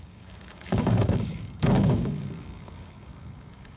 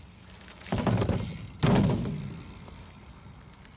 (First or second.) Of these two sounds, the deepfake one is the first